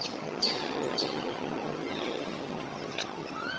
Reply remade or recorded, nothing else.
remade